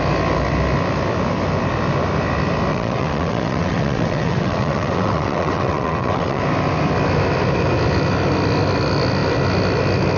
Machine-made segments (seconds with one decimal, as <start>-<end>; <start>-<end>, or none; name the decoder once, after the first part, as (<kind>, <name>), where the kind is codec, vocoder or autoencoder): 2.7-6.4 (vocoder, WaveNeXt)